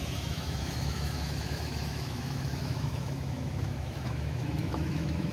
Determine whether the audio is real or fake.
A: fake